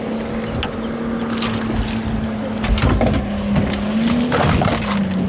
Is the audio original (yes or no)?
yes